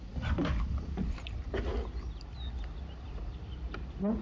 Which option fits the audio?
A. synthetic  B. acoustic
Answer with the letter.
B